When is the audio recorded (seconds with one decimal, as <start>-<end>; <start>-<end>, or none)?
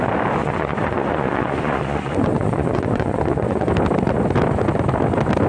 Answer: 0.0-0.4; 3.7-5.5